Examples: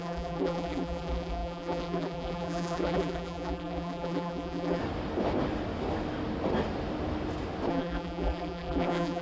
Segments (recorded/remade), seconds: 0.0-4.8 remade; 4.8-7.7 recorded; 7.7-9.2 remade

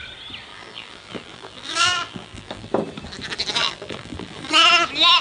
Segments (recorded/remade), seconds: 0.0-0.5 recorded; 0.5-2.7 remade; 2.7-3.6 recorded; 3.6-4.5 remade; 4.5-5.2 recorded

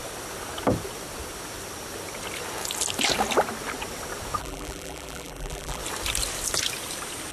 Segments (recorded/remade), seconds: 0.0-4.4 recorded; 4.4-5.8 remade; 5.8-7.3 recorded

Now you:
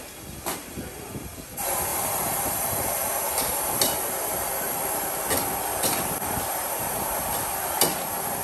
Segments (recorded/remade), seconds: 0.0-5.7 recorded; 5.7-6.5 remade; 6.5-8.4 recorded

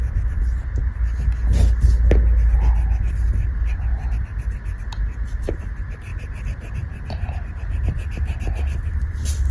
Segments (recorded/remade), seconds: 0.0-0.8 remade; 0.8-3.0 recorded; 3.0-9.5 remade

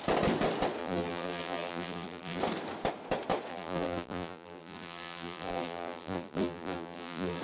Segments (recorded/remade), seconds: 0.0-0.8 recorded; 0.8-2.4 remade; 2.4-3.5 recorded; 3.5-7.4 remade